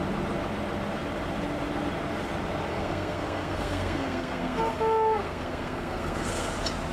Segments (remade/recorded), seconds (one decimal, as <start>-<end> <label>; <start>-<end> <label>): 0.0-2.7 recorded; 2.7-6.5 remade; 6.5-6.9 recorded